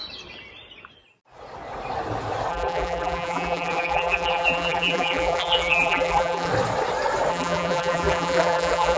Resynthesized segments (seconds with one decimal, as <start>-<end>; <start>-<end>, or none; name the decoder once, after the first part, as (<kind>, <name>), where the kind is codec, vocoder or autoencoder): 2.5-6.5 (vocoder, BigVGAN v2); 7.3-9.0